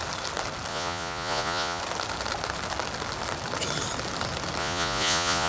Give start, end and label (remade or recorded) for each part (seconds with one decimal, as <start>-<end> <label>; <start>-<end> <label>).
0.0-0.7 recorded; 0.7-1.8 remade; 1.8-4.6 recorded; 4.6-5.5 remade